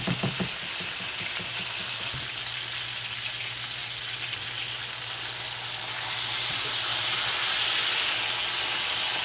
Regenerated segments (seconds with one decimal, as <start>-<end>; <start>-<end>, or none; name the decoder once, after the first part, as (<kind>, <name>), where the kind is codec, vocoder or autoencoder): 6.9-7.8 (vocoder, BigVGAN v2)